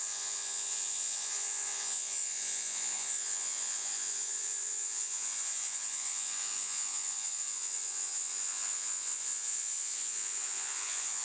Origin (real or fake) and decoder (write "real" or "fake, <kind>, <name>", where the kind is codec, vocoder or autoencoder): fake, vocoder, Vocos